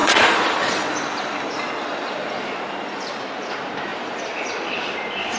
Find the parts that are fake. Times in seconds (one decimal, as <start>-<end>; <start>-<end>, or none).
0.0-0.9